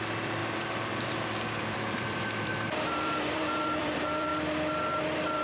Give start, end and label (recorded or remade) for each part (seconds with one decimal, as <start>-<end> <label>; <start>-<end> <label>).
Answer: 0.0-4.3 remade; 4.3-5.0 recorded; 5.0-5.4 remade

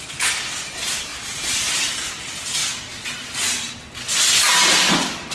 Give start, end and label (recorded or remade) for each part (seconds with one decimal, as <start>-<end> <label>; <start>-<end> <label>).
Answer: 0.0-1.1 recorded; 1.1-1.8 remade; 1.8-5.3 recorded

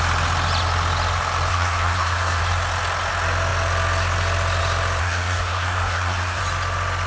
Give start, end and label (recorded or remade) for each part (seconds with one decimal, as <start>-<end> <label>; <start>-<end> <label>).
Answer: 0.0-1.5 recorded; 1.5-2.4 remade; 2.4-5.0 recorded; 5.0-6.4 remade; 6.4-7.1 recorded